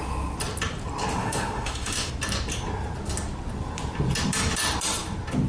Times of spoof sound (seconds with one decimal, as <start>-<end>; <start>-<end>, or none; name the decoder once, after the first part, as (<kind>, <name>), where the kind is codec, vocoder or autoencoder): 1.1-2.1 (autoencoder, DAC-VAE)